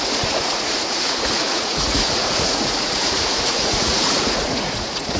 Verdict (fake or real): fake